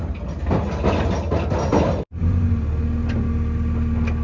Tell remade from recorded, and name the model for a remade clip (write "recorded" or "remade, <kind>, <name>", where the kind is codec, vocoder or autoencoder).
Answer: recorded